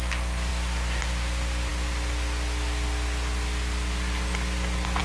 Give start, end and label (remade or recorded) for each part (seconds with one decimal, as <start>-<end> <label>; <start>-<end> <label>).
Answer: 0.0-5.0 recorded